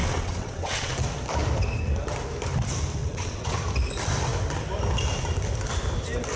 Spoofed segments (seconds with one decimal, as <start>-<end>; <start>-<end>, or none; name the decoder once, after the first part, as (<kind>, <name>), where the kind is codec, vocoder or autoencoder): 0.0-0.9 (vocoder, WaveNeXt); 3.0-3.6